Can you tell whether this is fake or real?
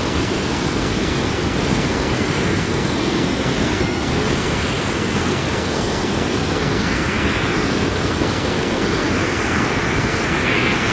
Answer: fake